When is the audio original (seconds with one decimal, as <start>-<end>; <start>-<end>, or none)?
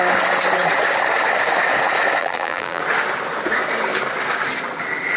0.0-2.2; 2.8-5.2